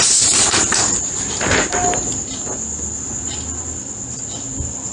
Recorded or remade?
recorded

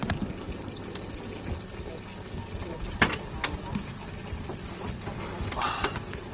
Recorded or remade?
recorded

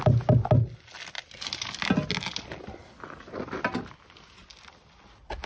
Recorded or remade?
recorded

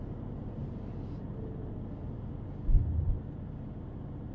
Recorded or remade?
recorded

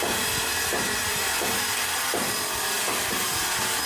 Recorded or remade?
recorded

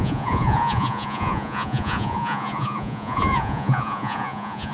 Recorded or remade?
remade